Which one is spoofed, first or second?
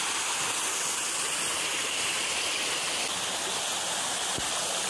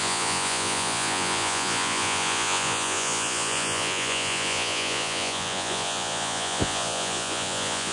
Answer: second